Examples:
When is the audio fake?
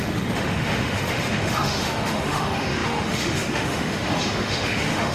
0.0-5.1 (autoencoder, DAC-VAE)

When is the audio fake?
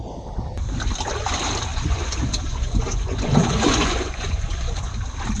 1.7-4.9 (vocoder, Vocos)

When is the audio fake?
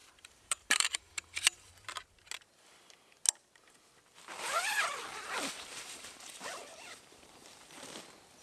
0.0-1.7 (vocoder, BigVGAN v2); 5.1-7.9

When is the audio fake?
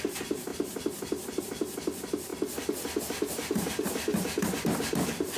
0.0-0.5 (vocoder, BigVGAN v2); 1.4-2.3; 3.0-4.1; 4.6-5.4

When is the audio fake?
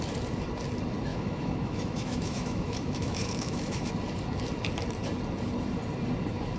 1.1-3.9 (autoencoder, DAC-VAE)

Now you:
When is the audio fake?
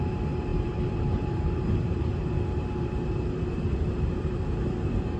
0.0-5.2 (vocoder, BigVGAN v2)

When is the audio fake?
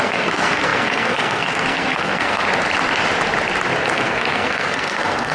0.0-2.4 (codec, SNAC); 3.9-5.3